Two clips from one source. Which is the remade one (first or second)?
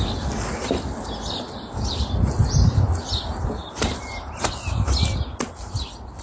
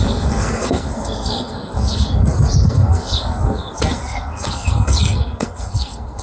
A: second